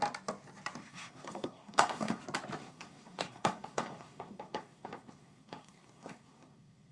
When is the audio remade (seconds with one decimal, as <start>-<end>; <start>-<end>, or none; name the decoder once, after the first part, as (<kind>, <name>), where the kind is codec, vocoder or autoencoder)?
0.8-2.2 (codec, SNAC); 2.6-6.9